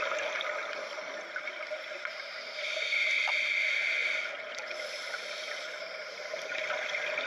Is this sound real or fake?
real